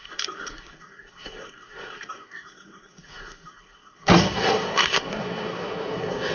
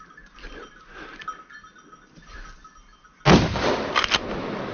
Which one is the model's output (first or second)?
first